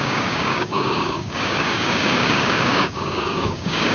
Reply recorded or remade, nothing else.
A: remade